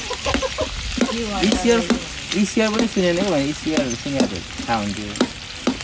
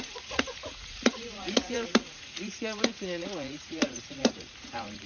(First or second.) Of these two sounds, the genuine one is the first